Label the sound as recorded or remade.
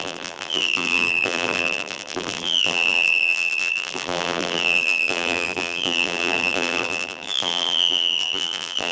remade